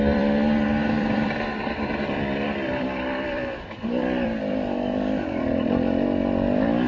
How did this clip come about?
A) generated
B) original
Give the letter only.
A